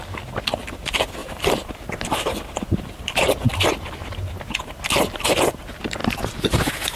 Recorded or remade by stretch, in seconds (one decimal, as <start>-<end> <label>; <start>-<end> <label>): 0.0-1.2 recorded; 1.2-3.0 remade; 3.0-7.0 recorded